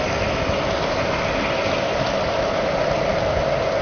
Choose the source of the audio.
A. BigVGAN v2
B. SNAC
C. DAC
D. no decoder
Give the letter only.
D